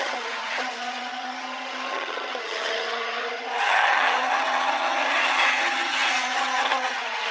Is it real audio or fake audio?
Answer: fake